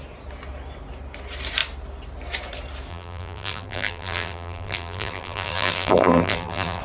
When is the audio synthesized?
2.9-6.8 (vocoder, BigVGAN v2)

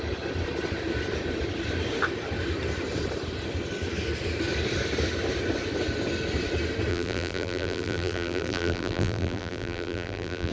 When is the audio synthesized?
6.9-10.5 (vocoder, BigVGAN v2)

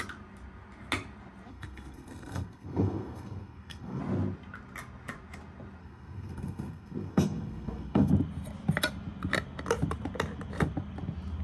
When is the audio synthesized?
1.5-4.0 (codec, SNAC); 5.8-8.1

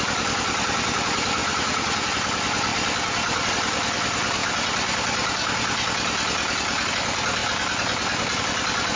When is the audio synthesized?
1.4-2.1 (vocoder, Vocos)